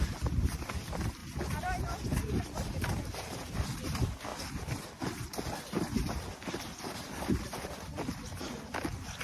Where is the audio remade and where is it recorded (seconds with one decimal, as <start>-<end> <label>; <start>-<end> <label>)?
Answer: 0.0-9.2 recorded